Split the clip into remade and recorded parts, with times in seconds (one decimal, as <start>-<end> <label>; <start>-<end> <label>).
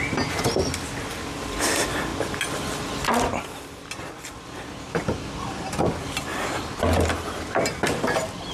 0.0-8.5 recorded